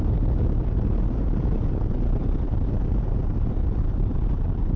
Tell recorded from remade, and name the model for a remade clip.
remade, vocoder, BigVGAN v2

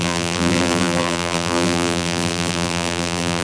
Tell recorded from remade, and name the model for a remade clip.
remade, vocoder, BigVGAN v2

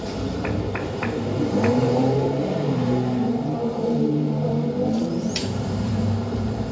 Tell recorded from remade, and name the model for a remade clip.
remade, vocoder, BigVGAN v2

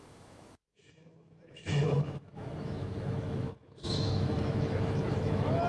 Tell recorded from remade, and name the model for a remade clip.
remade, autoencoder, DAC-VAE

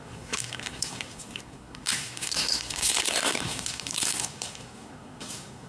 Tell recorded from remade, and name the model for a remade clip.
remade, codec, SNAC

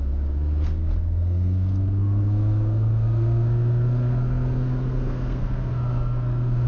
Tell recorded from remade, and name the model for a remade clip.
remade, codec, SNAC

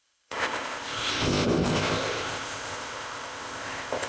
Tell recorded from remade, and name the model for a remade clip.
remade, codec, ZipCodec